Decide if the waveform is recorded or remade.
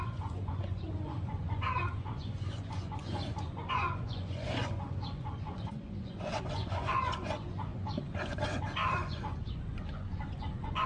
remade